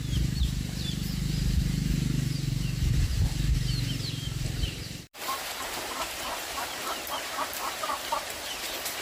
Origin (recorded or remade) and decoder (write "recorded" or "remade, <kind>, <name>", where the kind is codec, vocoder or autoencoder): remade, vocoder, BigVGAN v2